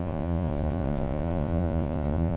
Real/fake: fake